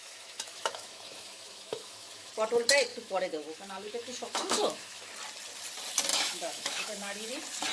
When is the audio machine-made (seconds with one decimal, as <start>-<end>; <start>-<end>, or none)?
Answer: 0.0-2.3; 2.9-5.1; 6.1-7.3